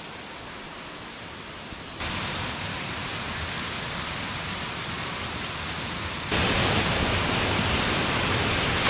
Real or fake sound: real